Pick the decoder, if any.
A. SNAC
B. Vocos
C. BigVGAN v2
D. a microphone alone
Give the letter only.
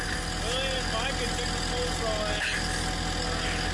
D